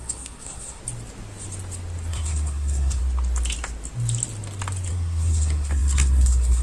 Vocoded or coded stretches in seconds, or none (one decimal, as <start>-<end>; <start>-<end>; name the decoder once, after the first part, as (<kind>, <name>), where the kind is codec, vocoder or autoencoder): 0.0-0.8 (codec, SNAC); 2.1-3.0; 4.9-6.6